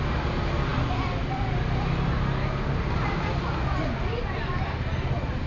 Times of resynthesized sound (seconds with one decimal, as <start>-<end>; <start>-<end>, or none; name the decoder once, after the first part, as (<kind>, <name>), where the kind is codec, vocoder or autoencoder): none